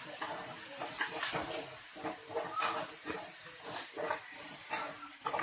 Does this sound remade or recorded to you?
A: remade